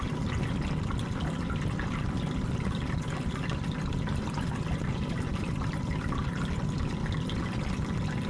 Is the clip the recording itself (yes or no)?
yes